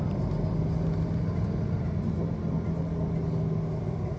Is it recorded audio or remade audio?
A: recorded